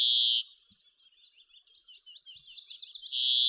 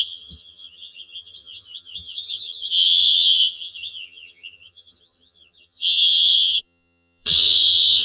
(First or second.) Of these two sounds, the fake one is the second